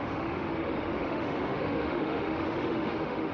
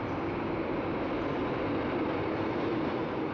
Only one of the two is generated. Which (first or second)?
first